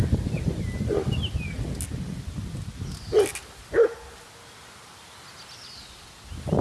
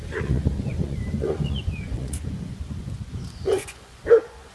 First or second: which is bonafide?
first